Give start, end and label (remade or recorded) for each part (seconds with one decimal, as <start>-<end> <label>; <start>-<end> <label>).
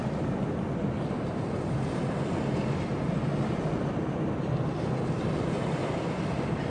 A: 0.0-5.8 recorded; 5.8-6.7 remade